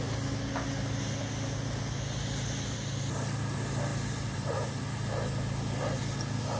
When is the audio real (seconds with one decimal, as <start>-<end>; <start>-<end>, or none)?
0.0-3.9; 4.9-6.6